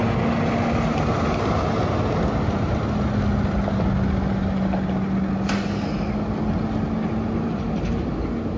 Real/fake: real